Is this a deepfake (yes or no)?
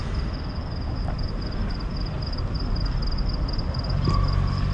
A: no